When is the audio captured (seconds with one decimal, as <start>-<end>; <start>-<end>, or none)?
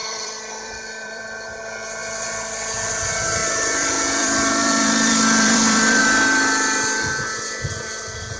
1.6-3.4; 6.0-8.4